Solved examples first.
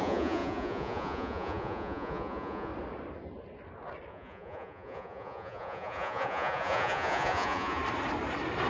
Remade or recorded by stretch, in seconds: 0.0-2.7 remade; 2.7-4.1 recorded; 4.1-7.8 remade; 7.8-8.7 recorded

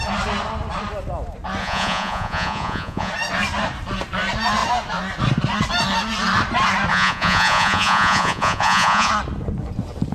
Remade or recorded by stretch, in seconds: 0.0-1.6 recorded; 1.6-3.1 remade; 3.1-6.9 recorded; 6.9-9.1 remade; 9.1-10.1 recorded

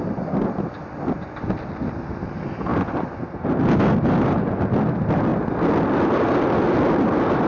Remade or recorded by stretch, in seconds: 0.0-7.5 recorded

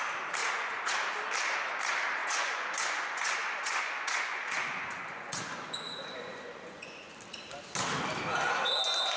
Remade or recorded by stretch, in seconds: 0.0-0.4 recorded; 0.4-0.9 remade; 0.9-2.2 recorded; 2.2-7.1 remade; 7.1-9.2 recorded

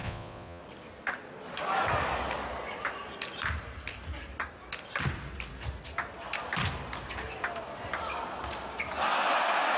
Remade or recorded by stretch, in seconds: 0.0-0.6 remade; 0.6-9.8 recorded

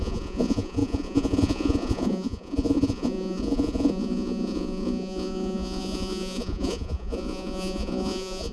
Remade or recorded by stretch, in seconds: 0.0-8.5 remade

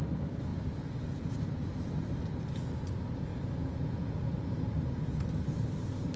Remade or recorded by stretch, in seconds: 0.0-0.5 recorded; 0.5-1.7 remade; 1.7-3.3 recorded; 3.3-4.5 remade; 4.5-6.2 recorded

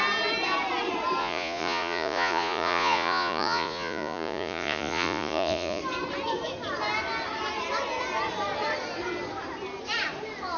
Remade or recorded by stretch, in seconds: 0.0-1.2 recorded; 1.2-5.8 remade; 5.8-10.6 recorded